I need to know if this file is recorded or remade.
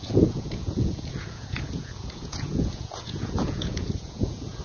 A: remade